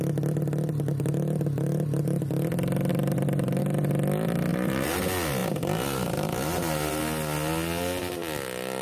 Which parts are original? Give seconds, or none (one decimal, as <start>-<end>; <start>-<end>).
0.0-2.9; 3.6-4.5; 5.0-5.4; 7.0-8.8